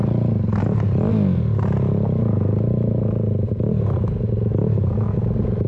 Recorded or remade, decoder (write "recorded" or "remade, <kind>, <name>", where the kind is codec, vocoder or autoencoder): recorded